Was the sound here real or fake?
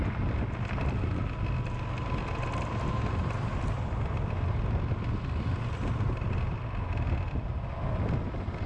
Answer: real